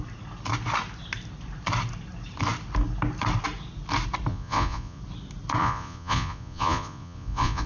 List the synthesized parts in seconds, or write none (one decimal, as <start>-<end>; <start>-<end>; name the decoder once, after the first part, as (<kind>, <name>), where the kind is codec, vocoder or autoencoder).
4.3-5.0 (vocoder, Vocos); 5.6-7.7